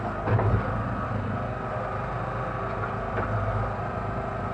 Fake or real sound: real